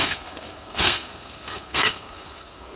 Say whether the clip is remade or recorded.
remade